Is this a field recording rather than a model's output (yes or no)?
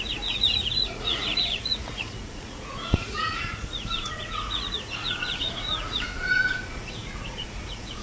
no